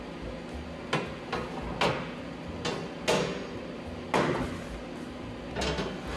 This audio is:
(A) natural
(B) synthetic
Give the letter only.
A